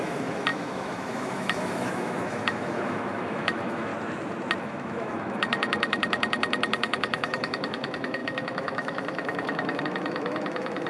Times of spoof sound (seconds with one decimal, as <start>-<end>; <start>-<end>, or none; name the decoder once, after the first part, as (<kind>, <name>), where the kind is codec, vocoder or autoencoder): 0.0-3.9 (autoencoder, DAC-VAE); 4.6-10.9